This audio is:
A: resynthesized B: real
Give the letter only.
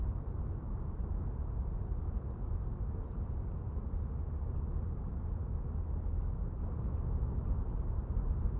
B